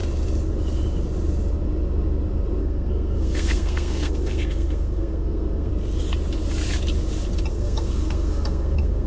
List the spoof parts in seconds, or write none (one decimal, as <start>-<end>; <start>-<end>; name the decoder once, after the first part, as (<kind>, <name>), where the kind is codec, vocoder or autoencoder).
2.6-5.7 (codec, SNAC); 7.5-9.1

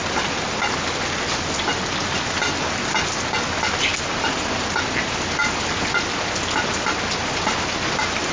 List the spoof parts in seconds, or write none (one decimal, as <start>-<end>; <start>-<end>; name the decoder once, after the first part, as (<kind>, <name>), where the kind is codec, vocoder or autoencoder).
none

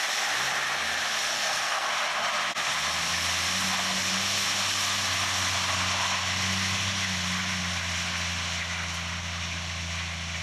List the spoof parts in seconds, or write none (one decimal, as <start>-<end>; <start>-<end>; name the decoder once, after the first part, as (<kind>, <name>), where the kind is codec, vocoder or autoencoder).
1.3-1.9 (codec, SNAC)

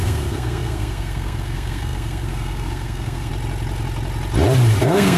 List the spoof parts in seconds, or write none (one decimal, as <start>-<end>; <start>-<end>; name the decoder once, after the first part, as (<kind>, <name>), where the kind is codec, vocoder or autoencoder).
0.0-3.3 (codec, SNAC); 4.8-5.2

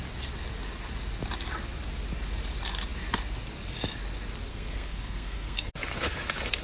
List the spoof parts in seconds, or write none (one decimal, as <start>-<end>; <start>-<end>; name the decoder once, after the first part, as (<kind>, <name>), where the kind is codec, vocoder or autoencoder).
4.5-5.7 (codec, SNAC)

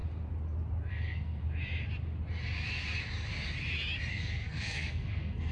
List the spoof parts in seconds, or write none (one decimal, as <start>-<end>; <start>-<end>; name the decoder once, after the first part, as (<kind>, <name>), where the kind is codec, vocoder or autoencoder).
0.9-1.4 (codec, SNAC); 4.1-5.5

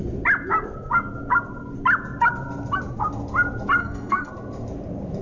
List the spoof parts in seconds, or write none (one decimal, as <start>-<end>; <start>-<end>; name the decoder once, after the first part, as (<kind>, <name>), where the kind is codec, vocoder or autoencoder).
3.8-4.3 (codec, SNAC)

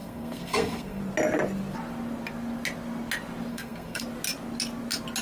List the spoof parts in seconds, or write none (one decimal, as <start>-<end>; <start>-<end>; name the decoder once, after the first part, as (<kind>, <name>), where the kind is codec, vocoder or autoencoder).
0.0-1.0 (codec, SNAC); 3.5-4.0